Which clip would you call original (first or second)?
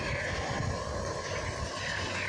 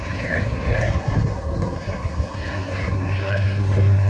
first